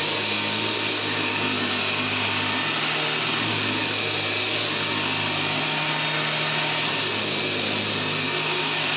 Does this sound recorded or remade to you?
recorded